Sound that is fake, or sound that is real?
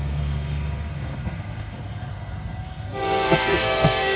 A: fake